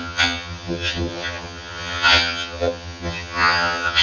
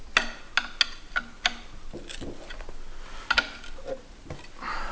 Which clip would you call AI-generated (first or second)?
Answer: first